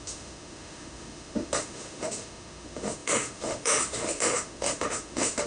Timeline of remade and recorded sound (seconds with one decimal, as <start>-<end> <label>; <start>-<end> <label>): 0.0-5.5 remade